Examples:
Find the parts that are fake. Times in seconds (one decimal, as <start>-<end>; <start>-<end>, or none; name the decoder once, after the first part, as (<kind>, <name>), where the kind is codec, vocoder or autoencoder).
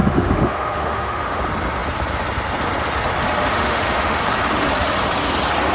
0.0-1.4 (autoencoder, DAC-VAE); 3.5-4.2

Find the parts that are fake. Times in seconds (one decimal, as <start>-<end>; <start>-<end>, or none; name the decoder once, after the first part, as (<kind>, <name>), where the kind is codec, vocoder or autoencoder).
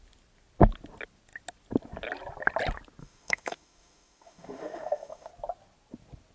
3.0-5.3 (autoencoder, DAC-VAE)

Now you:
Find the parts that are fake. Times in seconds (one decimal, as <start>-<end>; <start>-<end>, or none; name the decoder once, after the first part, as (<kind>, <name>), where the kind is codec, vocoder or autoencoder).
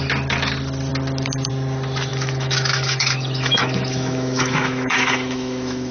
2.1-5.9 (autoencoder, DAC-VAE)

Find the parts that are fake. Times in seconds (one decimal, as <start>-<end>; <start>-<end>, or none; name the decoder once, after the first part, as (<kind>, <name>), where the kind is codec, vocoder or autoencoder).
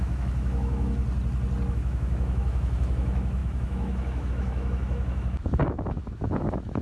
0.0-1.0 (autoencoder, DAC-VAE); 1.7-6.8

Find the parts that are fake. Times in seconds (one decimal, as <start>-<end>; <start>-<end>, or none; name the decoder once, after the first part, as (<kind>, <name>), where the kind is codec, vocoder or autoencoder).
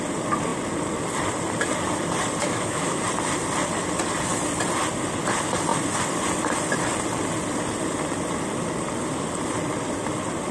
2.4-3.0 (autoencoder, DAC-VAE)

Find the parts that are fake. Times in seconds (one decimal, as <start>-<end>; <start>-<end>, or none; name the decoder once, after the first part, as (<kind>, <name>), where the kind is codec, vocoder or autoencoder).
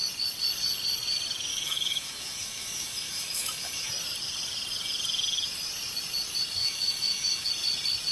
1.5-3.9 (autoencoder, DAC-VAE); 6.6-7.5